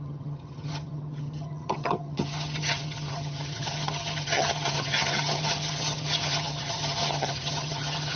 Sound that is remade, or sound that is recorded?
remade